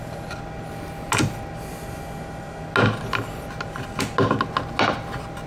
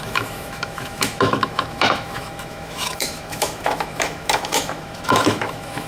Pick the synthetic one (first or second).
second